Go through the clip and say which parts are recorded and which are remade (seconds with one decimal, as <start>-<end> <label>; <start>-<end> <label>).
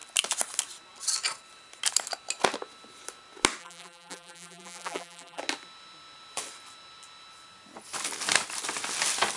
0.0-3.6 recorded; 3.6-5.4 remade; 5.4-9.4 recorded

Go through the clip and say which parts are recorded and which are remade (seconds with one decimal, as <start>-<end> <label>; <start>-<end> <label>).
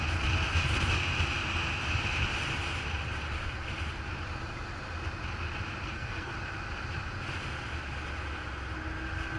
0.0-5.8 recorded; 5.8-6.3 remade; 6.3-9.4 recorded